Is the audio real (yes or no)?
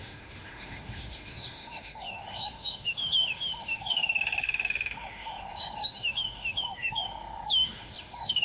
no